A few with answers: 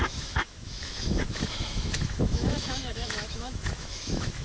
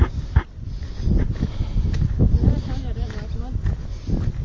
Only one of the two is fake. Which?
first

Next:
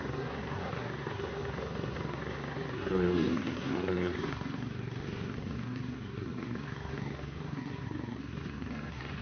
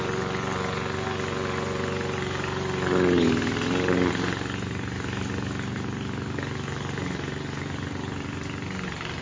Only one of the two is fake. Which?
first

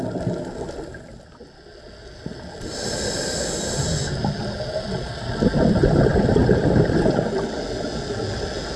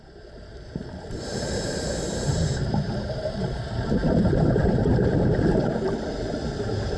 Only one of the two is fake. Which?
second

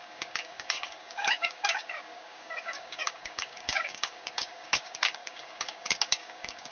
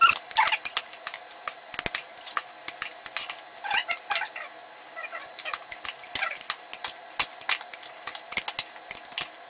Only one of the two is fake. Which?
first